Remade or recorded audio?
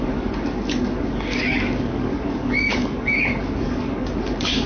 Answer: remade